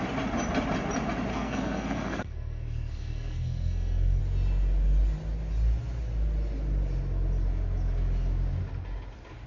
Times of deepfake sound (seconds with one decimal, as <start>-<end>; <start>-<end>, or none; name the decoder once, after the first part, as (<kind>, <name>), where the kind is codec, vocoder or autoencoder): 1.3-4.2 (codec, SNAC)

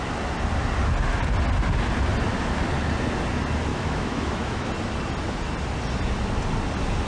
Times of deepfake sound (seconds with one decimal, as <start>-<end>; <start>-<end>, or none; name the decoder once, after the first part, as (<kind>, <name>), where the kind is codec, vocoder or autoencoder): 3.7-4.7 (autoencoder, DAC-VAE)

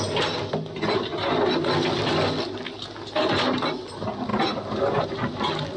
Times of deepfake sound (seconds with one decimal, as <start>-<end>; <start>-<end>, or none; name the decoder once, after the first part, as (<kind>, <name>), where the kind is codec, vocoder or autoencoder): none